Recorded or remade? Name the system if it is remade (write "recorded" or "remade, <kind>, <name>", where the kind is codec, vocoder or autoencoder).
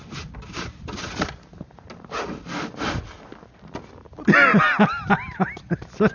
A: recorded